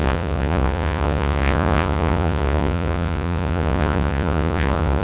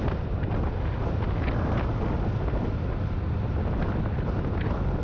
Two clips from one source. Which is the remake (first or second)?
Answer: first